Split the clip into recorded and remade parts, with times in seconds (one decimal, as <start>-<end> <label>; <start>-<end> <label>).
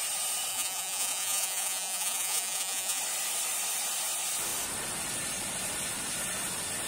0.0-0.5 recorded; 0.5-3.0 remade; 3.0-6.9 recorded